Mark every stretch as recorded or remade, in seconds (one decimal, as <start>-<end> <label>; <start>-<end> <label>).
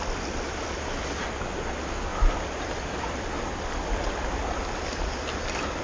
0.0-5.8 recorded